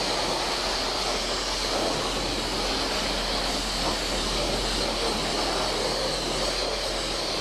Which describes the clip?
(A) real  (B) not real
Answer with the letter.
A